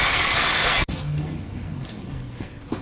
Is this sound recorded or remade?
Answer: remade